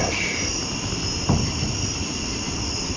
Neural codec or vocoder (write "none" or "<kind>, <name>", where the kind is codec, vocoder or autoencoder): none